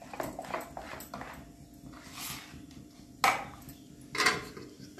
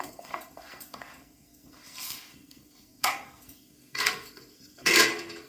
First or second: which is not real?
second